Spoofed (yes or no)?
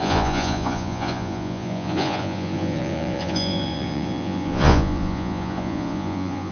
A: yes